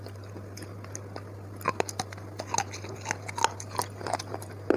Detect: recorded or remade recorded